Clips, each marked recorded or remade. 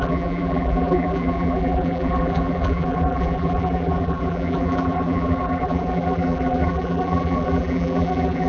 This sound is remade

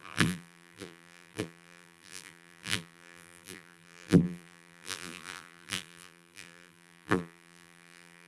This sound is remade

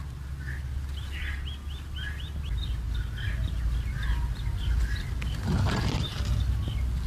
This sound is recorded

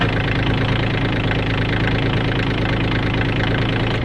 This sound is remade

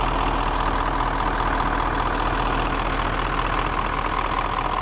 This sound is recorded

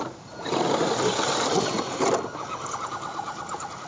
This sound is recorded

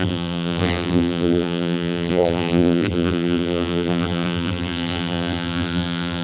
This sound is remade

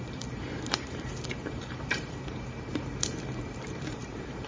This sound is remade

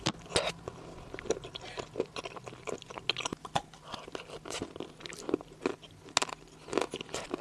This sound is recorded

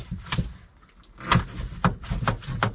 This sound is recorded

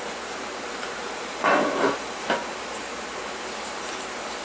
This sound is remade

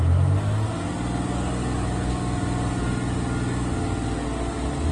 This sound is recorded